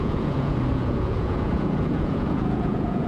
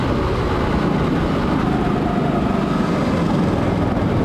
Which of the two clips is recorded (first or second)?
second